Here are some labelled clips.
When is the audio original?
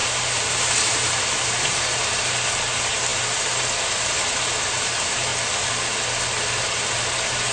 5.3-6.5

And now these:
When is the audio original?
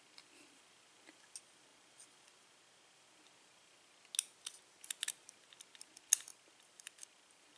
0.0-6.3